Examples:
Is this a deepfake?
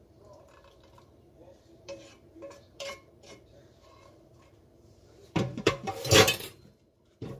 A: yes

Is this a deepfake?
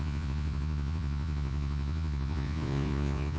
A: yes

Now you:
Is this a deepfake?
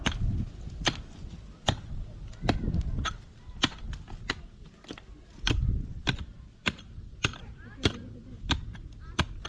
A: no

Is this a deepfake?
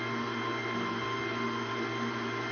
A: no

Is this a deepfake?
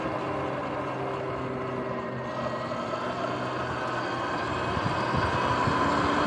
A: no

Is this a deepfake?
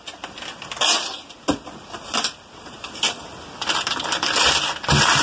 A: no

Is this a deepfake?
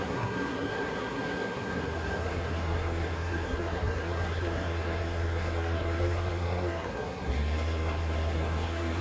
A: yes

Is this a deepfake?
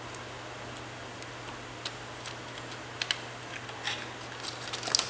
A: no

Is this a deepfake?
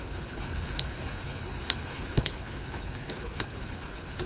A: yes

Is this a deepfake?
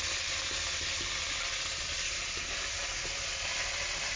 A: no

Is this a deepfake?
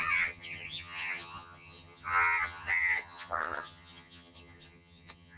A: yes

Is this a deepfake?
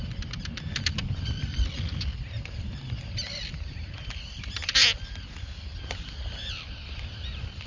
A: no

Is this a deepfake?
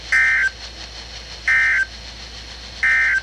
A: no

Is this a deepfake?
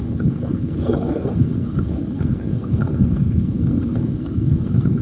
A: yes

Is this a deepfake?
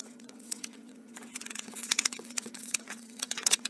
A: yes